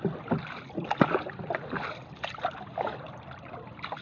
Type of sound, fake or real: real